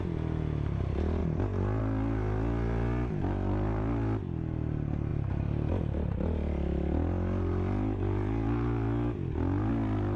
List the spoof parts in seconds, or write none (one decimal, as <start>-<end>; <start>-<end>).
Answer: none